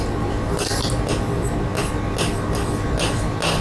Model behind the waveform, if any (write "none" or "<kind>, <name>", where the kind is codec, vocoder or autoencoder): none